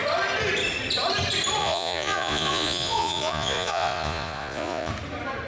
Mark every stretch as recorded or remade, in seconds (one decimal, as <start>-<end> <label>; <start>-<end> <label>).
0.0-1.6 recorded; 1.6-4.9 remade; 4.9-5.5 recorded